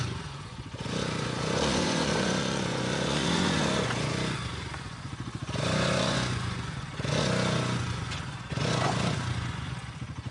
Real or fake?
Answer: fake